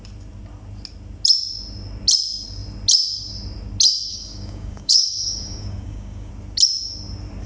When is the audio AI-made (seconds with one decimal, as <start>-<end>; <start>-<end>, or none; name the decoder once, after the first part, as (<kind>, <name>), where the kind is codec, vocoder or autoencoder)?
4.1-6.3 (codec, DAC)